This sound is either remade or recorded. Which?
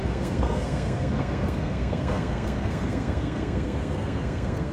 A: remade